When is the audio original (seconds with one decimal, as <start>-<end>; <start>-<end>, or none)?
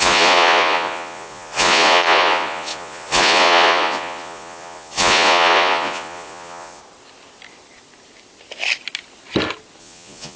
6.8-9.8